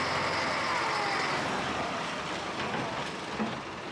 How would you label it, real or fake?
real